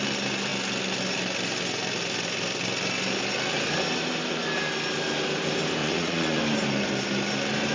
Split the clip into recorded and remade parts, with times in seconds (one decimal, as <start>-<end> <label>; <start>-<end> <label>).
0.0-5.8 recorded; 5.8-6.4 remade; 6.4-7.7 recorded